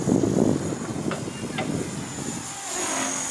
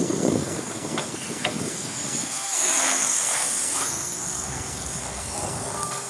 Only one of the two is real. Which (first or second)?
first